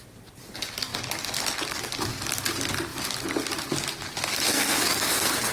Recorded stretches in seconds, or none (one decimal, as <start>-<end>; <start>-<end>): 0.0-4.5